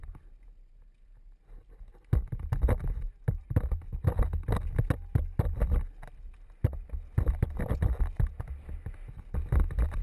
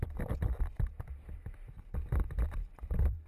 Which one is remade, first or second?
second